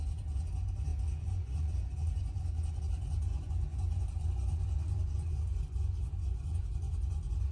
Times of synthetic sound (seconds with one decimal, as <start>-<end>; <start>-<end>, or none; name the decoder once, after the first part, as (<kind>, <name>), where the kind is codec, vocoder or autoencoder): 0.0-7.5 (vocoder, Vocos)